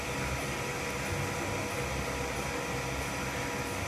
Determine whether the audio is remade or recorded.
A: recorded